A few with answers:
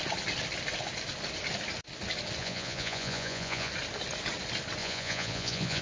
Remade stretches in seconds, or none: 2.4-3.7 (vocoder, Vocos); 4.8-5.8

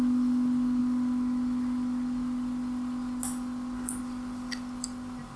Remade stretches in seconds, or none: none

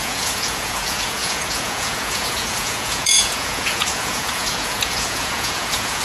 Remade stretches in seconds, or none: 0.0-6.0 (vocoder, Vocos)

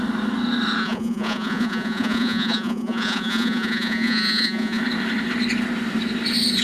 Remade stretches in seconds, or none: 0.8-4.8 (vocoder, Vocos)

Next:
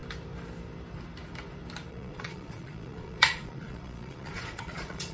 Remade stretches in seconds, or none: 1.9-5.1 (vocoder, Vocos)